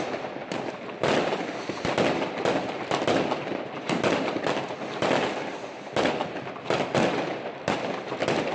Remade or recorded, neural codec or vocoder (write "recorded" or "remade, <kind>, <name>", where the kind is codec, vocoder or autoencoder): remade, vocoder, BigVGAN v2